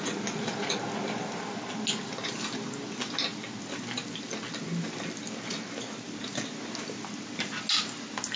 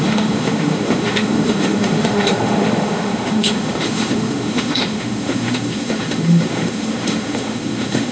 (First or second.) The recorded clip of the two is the first